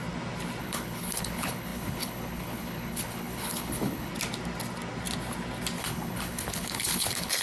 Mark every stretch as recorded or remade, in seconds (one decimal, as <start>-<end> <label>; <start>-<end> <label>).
0.0-0.6 recorded; 0.6-4.1 remade; 4.1-5.8 recorded; 5.8-7.4 remade